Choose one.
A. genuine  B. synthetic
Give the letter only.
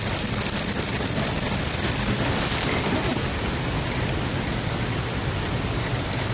A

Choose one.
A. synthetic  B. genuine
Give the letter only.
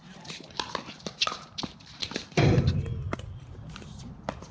A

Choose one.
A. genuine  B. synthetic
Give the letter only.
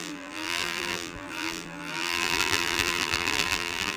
B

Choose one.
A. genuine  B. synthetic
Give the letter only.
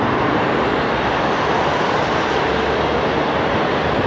A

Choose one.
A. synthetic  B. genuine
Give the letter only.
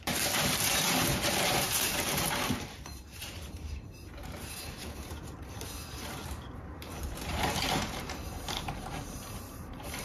A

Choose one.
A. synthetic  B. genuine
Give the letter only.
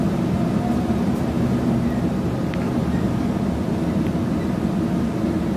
B